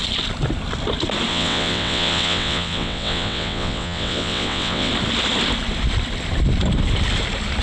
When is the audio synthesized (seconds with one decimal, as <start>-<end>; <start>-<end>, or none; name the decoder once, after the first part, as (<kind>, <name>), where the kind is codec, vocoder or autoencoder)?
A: 1.3-4.9 (vocoder, WaveNeXt)